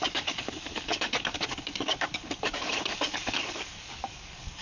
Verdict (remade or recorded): remade